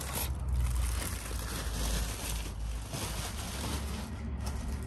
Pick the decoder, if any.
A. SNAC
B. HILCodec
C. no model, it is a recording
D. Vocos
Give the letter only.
C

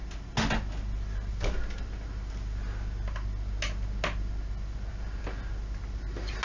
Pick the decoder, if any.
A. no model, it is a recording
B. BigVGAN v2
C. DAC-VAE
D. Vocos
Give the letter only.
A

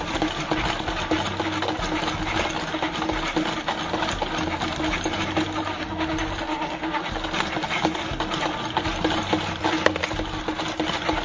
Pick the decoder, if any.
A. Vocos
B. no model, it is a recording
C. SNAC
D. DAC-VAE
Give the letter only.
B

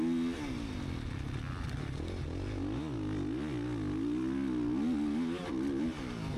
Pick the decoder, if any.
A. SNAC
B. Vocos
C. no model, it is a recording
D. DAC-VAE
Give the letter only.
C